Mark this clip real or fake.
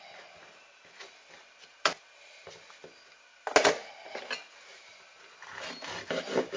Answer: real